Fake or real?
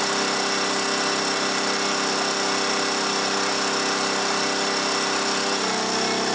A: real